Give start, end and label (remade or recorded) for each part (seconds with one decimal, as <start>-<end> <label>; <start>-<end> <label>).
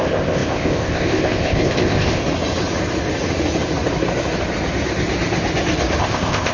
0.0-2.2 remade; 2.2-6.0 recorded; 6.0-6.5 remade